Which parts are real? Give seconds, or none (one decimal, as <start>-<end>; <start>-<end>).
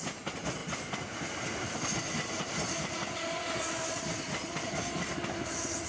0.0-5.9